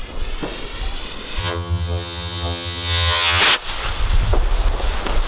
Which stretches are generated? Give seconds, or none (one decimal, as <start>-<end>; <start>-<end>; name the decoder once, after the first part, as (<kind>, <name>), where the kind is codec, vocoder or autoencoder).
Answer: 1.4-3.4 (vocoder, HiFi-GAN)